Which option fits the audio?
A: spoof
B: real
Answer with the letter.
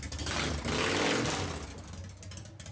B